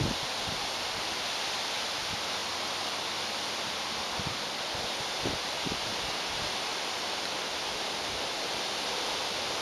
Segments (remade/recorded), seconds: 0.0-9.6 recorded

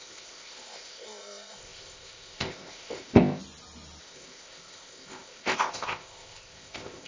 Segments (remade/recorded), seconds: 0.0-3.4 remade; 3.4-4.0 recorded; 4.0-7.1 remade

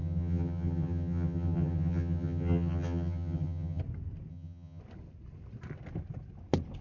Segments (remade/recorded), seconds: 0.0-3.8 remade; 3.8-4.3 recorded; 4.3-4.8 remade; 4.8-6.8 recorded

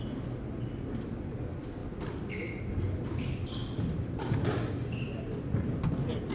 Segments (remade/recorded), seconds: 0.0-6.3 recorded

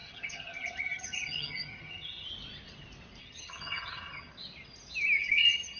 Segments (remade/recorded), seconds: 0.0-2.3 remade; 2.3-3.2 recorded; 3.2-4.3 remade; 4.3-5.2 recorded; 5.2-5.8 remade

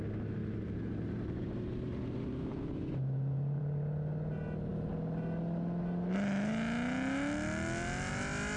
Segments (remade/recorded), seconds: 0.0-0.4 recorded; 0.4-3.6 remade; 3.6-8.6 recorded